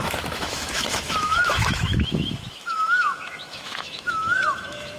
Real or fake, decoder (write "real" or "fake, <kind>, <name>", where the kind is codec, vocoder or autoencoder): fake, autoencoder, DAC-VAE